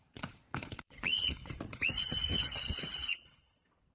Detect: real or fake fake